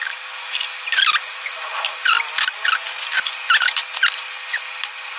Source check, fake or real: real